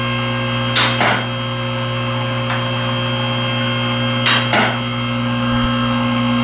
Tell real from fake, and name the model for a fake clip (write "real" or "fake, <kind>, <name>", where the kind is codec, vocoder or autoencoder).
real